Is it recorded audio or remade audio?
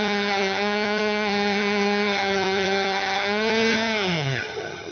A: remade